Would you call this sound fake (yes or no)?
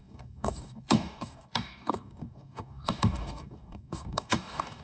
yes